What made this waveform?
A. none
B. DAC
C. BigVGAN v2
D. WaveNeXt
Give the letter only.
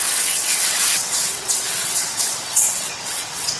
D